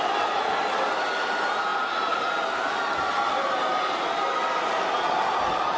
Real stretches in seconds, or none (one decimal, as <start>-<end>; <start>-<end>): 0.0-5.8